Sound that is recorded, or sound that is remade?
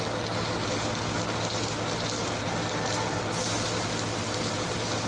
recorded